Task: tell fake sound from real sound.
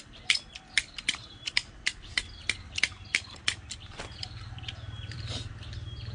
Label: fake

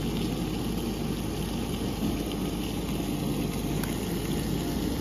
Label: real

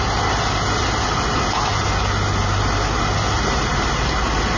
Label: real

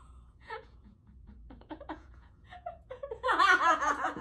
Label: fake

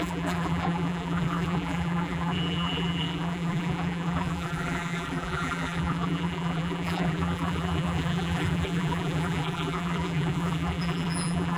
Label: fake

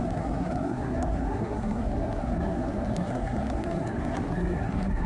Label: fake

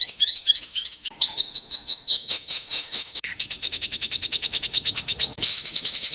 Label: fake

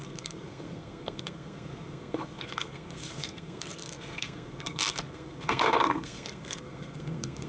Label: fake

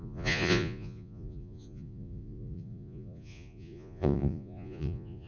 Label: fake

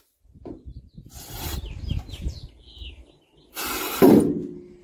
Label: real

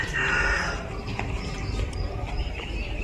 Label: fake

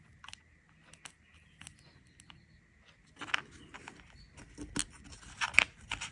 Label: real